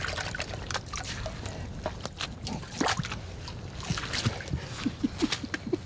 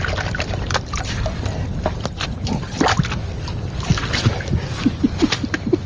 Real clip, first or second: first